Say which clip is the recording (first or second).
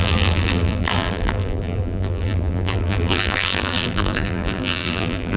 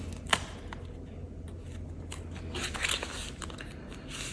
second